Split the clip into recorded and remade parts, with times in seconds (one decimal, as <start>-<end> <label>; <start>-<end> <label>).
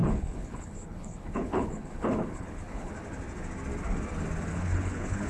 0.0-2.9 remade; 2.9-4.5 recorded; 4.5-5.3 remade